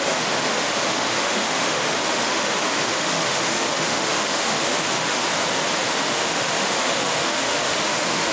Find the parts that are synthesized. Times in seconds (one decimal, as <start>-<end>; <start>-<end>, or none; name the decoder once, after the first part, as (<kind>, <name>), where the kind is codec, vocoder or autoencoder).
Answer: 0.0-5.2 (autoencoder, DAC-VAE); 5.9-8.3